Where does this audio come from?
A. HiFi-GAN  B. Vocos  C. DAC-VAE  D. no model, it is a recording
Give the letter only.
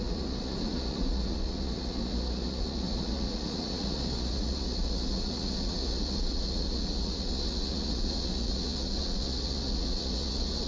B